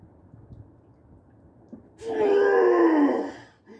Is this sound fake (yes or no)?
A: no